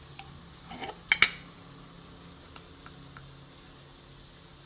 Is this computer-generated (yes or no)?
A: no